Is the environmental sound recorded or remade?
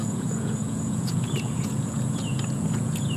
remade